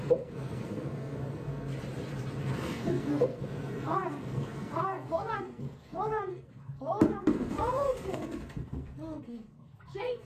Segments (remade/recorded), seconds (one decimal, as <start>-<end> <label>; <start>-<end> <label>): 0.0-1.7 remade; 1.7-2.4 recorded; 2.4-10.3 remade